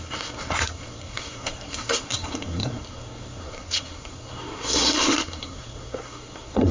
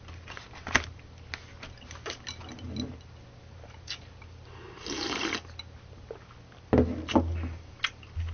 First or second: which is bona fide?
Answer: second